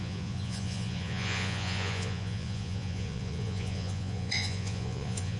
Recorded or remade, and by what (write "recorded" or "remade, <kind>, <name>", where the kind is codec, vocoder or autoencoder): remade, vocoder, Vocos